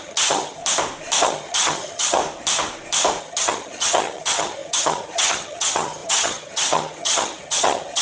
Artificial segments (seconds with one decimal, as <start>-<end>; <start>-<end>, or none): 0.0-0.6; 1.2-2.2; 3.2-8.0